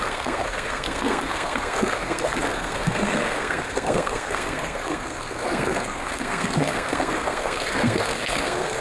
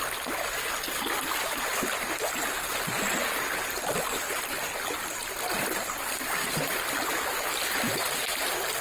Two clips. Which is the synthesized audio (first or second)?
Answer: first